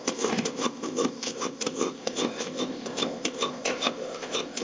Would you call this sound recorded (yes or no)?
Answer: no